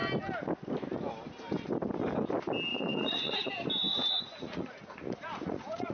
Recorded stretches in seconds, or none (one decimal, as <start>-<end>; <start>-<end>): 0.0-2.7; 3.5-3.9